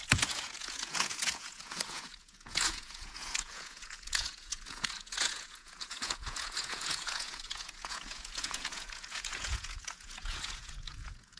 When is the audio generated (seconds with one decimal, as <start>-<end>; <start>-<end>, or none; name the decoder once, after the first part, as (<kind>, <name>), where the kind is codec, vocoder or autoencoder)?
0.0-11.4 (vocoder, Vocos)